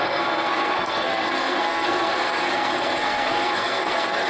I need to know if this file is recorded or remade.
remade